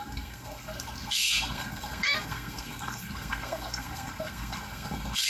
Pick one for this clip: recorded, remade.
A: remade